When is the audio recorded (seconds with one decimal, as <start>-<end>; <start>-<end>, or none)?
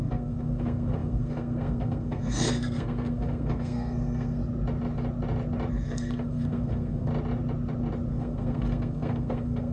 4.4-5.7; 7.1-8.1